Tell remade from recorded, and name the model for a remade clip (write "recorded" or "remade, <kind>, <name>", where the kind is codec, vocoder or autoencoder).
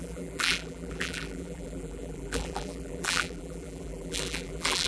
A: remade, vocoder, BigVGAN v2